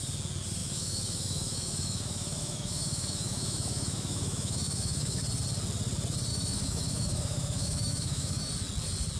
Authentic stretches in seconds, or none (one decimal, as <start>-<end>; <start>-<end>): 0.0-0.6; 5.2-6.3; 8.5-9.2